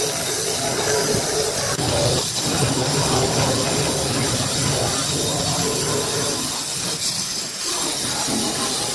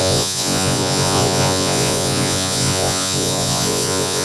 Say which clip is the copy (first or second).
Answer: second